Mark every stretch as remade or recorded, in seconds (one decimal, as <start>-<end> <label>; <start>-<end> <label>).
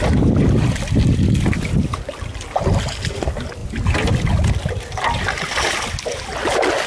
0.0-6.9 recorded